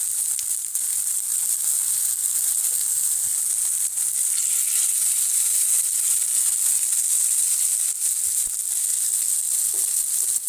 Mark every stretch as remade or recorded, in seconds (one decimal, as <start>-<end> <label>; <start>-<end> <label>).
0.0-10.5 recorded